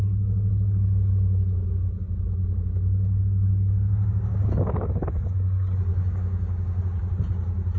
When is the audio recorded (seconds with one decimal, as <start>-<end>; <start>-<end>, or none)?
0.0-2.4; 5.3-5.9; 6.8-7.8